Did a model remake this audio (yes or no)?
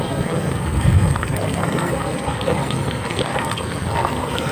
yes